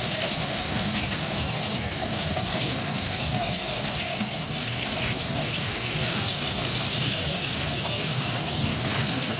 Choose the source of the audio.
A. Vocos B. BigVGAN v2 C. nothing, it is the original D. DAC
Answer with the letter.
D